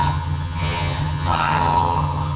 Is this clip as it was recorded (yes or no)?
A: no